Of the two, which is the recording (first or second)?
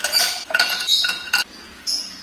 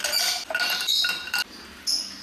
second